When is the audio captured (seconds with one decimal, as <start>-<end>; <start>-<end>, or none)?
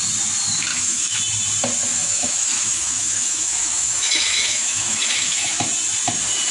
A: 0.0-0.7; 1.2-1.9; 5.6-6.5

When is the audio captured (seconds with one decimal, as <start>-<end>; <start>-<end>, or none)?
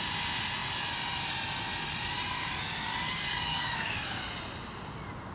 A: 0.0-3.5; 4.2-5.3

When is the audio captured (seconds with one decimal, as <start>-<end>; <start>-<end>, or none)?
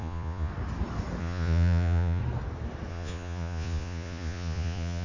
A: 0.5-1.2; 2.2-2.9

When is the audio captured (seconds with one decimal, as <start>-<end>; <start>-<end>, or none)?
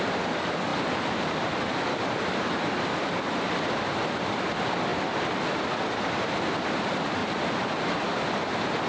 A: 4.9-6.0; 7.2-7.8